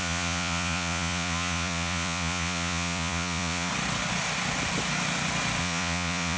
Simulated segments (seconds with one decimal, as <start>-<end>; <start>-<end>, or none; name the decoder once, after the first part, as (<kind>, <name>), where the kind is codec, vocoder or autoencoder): 0.0-3.7 (vocoder, Vocos); 5.6-6.4